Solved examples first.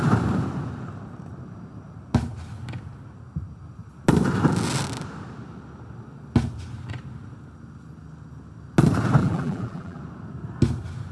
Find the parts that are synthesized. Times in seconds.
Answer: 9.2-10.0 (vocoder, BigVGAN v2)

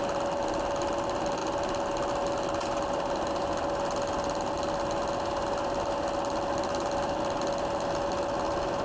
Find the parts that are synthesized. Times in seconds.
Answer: none

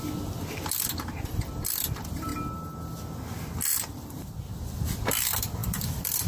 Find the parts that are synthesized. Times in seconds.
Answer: 3.7-4.8 (vocoder, BigVGAN v2); 5.6-6.3

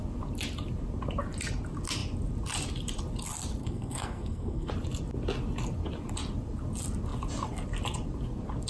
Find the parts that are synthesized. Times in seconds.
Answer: 3.6-4.7 (codec, SNAC)

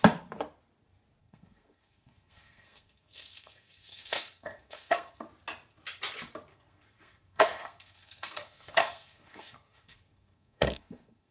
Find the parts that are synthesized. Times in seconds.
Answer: 1.2-5.3 (codec, SNAC); 6.5-11.3

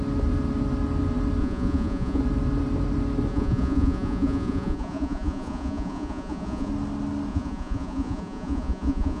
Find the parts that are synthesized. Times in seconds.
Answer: 1.4-2.2 (vocoder, Vocos); 3.3-6.7; 7.3-9.2

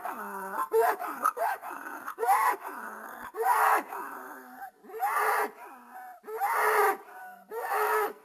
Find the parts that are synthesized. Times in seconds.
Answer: 0.0-4.8 (codec, SNAC); 7.2-8.2

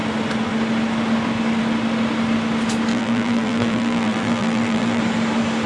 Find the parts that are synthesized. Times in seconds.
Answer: 2.9-5.0 (vocoder, BigVGAN v2)